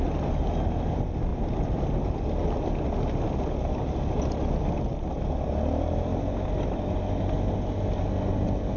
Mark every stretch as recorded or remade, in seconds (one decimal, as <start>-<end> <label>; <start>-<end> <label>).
0.0-8.8 recorded